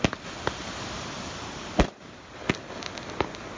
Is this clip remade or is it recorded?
recorded